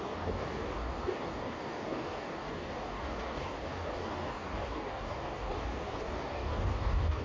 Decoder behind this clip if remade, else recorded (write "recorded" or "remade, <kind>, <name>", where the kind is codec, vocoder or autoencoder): remade, codec, DAC